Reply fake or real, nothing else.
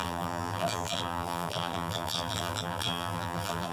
fake